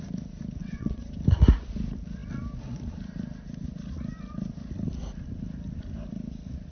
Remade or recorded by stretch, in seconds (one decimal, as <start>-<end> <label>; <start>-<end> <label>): 0.0-0.6 recorded; 0.6-1.1 remade; 1.1-6.7 recorded